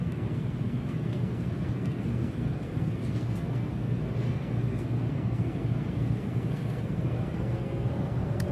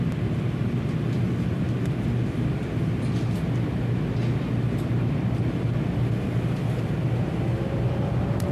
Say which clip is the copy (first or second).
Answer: first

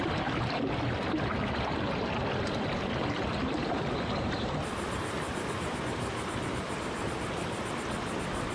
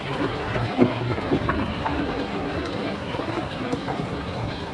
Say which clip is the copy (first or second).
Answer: second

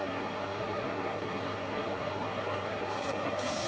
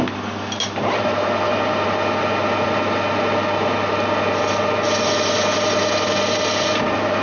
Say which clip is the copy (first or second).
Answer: first